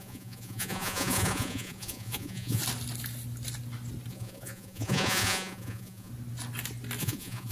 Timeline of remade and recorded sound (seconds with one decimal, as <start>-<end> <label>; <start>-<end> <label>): 0.0-2.6 remade; 2.6-4.1 recorded; 4.1-6.1 remade; 6.1-7.0 recorded; 7.0-7.5 remade